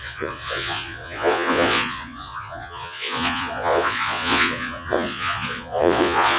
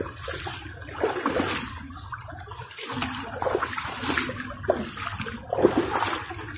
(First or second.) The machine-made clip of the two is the first